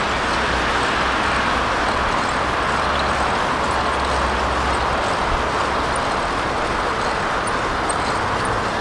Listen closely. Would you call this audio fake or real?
real